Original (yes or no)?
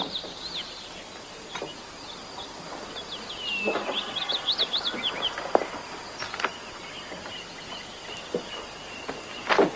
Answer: yes